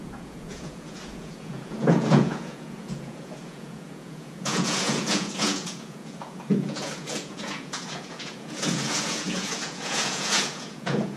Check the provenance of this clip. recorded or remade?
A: remade